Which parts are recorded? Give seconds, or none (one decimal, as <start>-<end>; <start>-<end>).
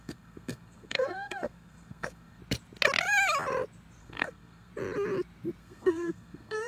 2.4-4.0; 4.7-5.6